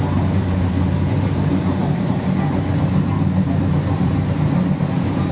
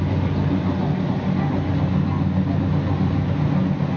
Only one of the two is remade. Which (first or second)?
first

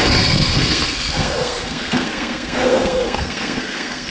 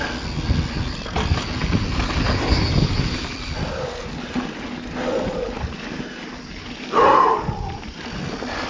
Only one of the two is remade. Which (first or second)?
first